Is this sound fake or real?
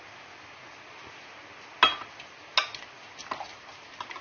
real